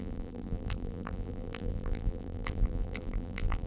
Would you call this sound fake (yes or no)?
yes